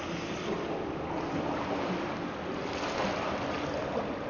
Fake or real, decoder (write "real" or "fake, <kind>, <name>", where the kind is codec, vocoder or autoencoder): real